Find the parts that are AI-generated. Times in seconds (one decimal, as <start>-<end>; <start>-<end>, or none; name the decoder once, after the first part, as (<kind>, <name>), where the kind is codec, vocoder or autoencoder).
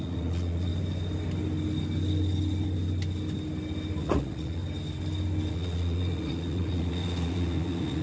0.0-0.7 (vocoder, Vocos); 4.0-4.6; 5.5-8.0